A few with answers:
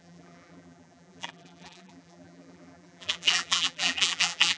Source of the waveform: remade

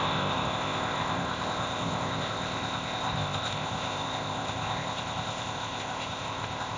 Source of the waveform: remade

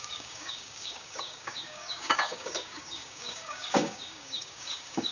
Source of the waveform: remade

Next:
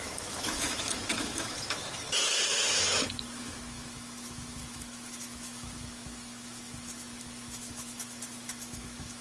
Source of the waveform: remade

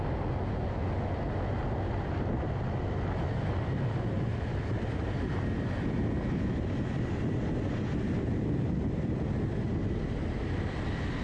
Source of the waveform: recorded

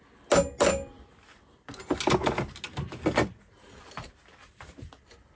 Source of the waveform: recorded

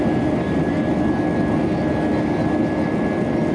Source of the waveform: recorded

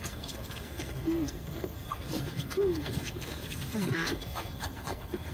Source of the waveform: remade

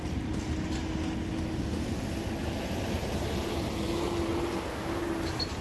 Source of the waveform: recorded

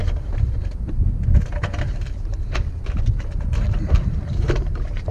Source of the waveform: remade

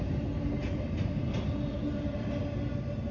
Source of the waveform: recorded